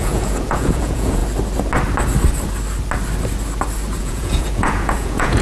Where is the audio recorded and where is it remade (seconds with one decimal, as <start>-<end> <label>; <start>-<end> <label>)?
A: 0.0-1.2 remade; 1.2-4.0 recorded; 4.0-5.4 remade